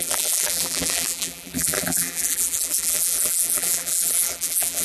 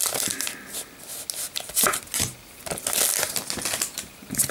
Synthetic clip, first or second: first